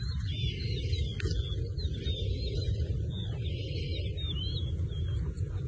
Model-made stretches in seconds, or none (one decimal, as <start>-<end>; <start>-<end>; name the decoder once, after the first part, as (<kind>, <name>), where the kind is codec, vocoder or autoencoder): none

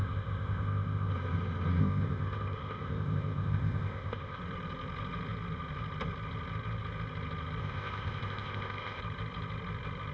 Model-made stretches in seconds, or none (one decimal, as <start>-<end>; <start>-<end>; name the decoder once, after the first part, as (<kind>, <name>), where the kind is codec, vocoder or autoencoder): 0.0-1.1 (codec, ZipCodec); 1.8-4.4; 7.6-9.0

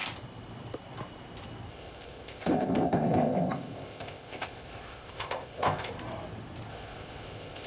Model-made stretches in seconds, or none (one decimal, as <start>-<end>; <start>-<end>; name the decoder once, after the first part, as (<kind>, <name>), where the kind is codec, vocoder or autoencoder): 1.7-5.9 (codec, ZipCodec); 6.7-7.7

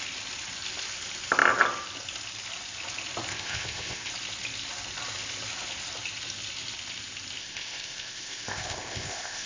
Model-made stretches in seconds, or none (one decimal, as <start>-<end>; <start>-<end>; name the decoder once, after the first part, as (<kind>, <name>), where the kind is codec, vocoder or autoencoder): 3.3-4.1 (codec, ZipCodec); 7.4-9.5